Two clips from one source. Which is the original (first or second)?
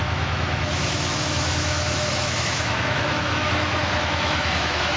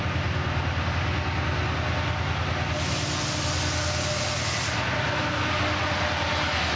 second